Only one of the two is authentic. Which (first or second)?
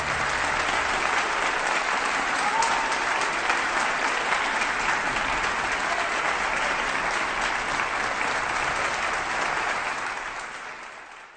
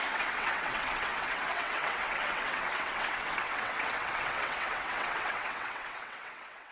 first